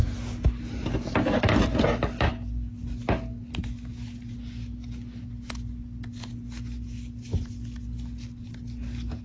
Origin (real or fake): real